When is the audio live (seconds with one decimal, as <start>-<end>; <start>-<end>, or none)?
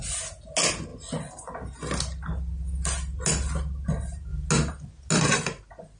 0.0-6.0